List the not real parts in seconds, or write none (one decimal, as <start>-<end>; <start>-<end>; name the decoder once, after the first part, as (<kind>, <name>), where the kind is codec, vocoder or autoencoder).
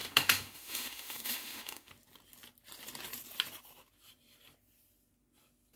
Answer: 0.0-1.9 (autoencoder, DAC-VAE)